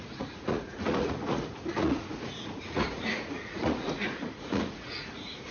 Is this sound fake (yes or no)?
yes